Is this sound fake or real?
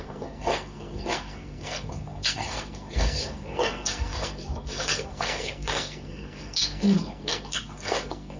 fake